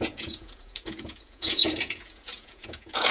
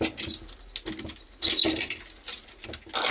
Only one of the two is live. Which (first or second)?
second